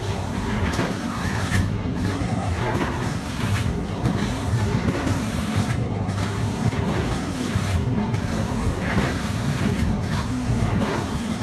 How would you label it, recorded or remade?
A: remade